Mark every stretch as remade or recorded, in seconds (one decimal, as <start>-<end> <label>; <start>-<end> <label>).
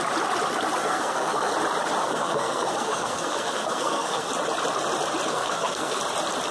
0.0-0.8 recorded; 0.8-1.5 remade; 1.5-2.0 recorded; 2.0-4.3 remade; 4.3-5.3 recorded; 5.3-6.0 remade; 6.0-6.5 recorded